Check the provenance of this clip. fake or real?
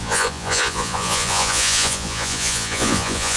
fake